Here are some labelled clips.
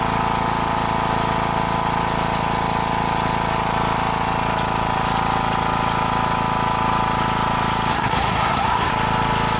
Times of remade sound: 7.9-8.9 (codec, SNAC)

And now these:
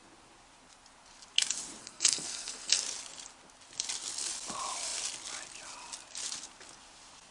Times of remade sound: 1.8-2.8 (codec, SNAC)